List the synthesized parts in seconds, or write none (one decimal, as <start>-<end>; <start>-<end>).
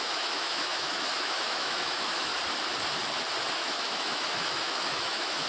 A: 0.0-2.3; 3.5-5.5